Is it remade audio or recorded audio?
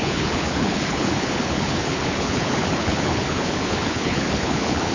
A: remade